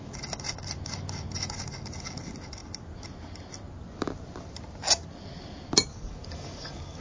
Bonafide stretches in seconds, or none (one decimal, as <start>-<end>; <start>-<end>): 0.0-5.9